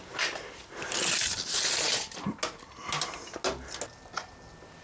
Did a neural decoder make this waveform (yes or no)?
no